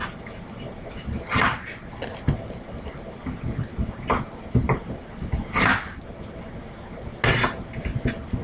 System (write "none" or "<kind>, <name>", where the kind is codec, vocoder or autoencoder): none